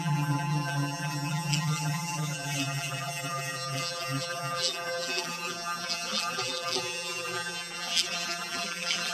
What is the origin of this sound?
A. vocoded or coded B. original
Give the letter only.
A